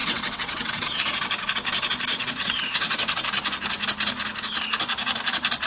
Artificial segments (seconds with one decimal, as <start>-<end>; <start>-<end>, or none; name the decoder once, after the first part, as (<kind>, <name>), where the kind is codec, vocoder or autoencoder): 0.0-1.0 (vocoder, WaveNeXt); 2.1-3.2